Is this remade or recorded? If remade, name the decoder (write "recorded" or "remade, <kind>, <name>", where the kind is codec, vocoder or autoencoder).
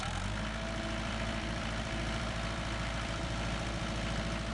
remade, vocoder, BigVGAN v2